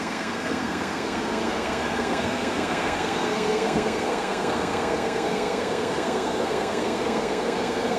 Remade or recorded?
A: remade